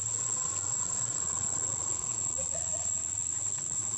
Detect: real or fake fake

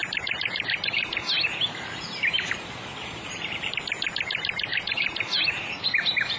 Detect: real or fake fake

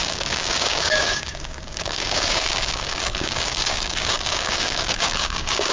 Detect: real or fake fake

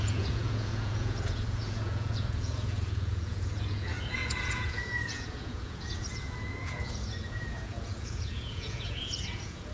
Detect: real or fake fake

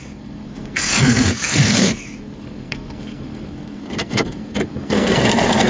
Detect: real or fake fake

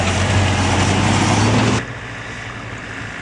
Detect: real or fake real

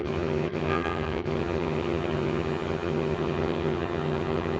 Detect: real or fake fake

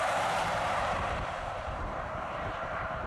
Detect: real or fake fake